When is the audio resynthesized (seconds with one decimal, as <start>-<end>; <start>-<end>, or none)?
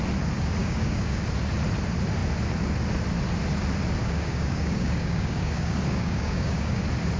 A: 0.6-1.2; 4.0-6.8